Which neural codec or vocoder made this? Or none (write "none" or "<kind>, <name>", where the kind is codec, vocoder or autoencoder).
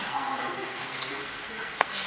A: codec, SNAC